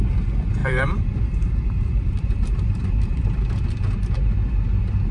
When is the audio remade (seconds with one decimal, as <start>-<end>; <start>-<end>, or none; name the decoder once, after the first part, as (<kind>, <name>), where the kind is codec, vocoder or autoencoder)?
0.6-3.7 (vocoder, BigVGAN v2)